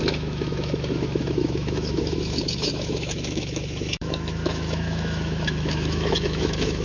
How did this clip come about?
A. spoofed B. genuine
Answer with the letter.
A